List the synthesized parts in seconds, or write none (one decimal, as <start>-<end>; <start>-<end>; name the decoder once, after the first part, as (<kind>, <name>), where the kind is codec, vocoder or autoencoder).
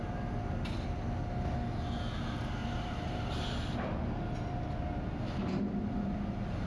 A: 2.6-3.7 (vocoder, BigVGAN v2)